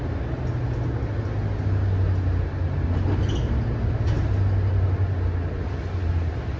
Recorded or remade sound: recorded